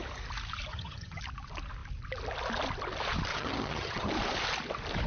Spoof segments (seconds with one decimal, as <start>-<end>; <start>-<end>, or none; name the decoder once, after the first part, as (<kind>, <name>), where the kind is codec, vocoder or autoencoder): 0.7-1.2 (vocoder, HiFi-GAN); 3.3-4.1